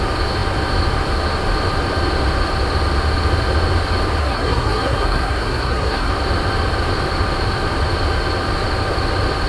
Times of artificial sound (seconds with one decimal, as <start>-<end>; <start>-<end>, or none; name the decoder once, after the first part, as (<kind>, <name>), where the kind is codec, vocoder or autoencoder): 4.2-6.1 (codec, SNAC)